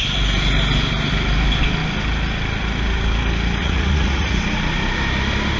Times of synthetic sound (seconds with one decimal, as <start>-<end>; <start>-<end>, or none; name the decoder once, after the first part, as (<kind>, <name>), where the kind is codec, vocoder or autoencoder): 3.6-4.4 (vocoder, Vocos)